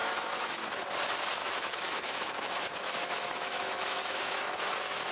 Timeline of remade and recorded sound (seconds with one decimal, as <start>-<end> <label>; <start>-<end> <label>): 0.0-0.6 remade; 0.6-1.4 recorded; 1.4-4.5 remade; 4.5-5.1 recorded